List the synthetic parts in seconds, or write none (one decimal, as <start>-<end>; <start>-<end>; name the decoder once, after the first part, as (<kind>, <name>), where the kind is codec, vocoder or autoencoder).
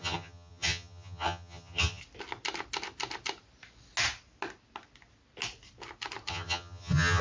0.0-2.0 (vocoder, HiFi-GAN); 6.3-7.2